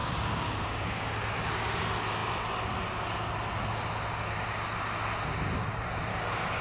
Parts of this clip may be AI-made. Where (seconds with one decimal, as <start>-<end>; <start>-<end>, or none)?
0.0-1.0; 6.1-6.6